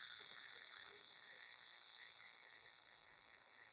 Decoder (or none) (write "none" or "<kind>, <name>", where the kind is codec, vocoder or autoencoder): autoencoder, DAC-VAE